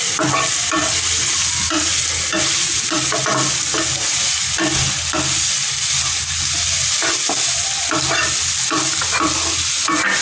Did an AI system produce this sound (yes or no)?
no